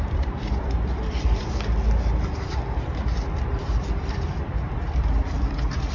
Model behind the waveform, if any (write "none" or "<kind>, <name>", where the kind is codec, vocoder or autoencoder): vocoder, BigVGAN v2